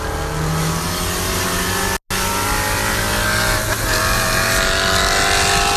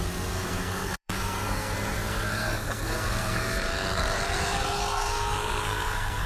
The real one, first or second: first